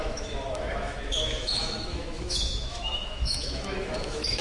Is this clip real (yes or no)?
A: no